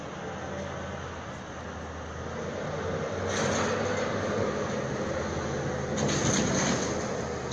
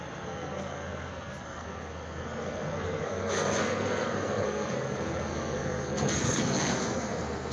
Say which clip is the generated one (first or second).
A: second